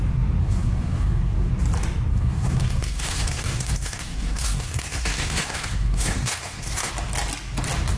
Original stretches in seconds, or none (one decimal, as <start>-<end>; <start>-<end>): 0.0-0.4; 1.5-2.1; 6.9-8.0